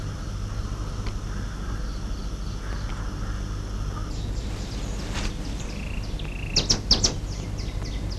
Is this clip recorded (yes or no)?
yes